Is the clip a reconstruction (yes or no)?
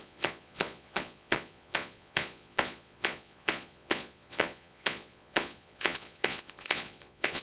yes